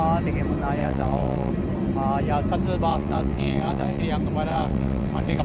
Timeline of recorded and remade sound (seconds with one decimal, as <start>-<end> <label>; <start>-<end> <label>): 0.0-0.8 recorded; 0.8-1.5 remade; 1.5-2.9 recorded; 2.9-4.0 remade; 4.0-4.5 recorded; 4.5-5.4 remade